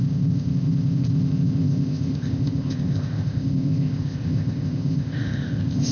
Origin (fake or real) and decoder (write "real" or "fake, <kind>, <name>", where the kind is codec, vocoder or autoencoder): fake, codec, ZipCodec